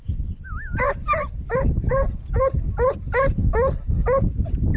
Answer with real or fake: real